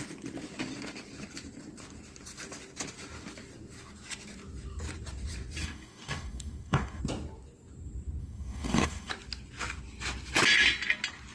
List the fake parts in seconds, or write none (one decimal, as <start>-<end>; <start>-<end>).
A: 5.6-7.0; 8.2-9.1